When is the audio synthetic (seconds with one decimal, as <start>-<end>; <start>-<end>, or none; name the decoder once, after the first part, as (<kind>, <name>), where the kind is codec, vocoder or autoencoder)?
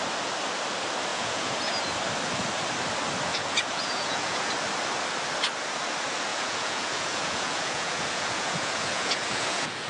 1.1-1.6 (vocoder, Vocos); 3.3-4.5; 6.3-9.9